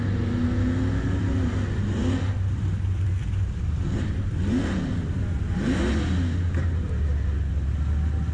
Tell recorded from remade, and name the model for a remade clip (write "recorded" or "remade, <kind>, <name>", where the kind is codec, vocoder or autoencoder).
recorded